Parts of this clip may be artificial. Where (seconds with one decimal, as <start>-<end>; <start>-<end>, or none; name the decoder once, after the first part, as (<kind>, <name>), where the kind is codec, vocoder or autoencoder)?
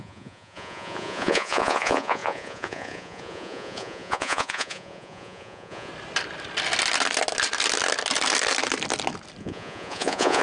0.0-5.9 (vocoder, Vocos); 9.4-10.4